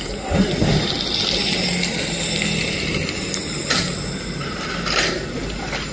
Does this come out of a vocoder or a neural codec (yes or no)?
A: no